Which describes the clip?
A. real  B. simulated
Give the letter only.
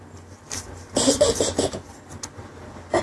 A